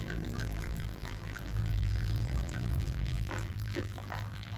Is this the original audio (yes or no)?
no